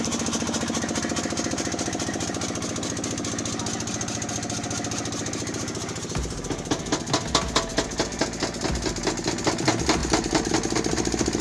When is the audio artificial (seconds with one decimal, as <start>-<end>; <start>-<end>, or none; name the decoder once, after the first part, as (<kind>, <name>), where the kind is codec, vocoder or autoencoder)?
none